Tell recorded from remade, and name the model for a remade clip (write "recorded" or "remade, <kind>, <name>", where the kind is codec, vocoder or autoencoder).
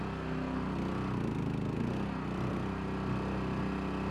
recorded